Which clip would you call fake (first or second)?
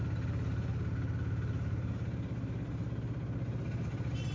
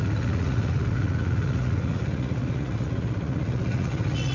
second